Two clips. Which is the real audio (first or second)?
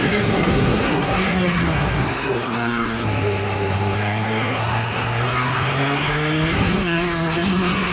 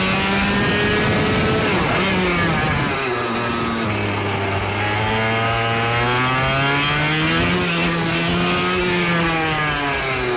second